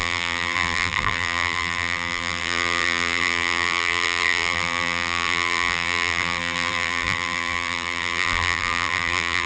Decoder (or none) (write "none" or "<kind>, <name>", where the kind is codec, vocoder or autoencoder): vocoder, BigVGAN v2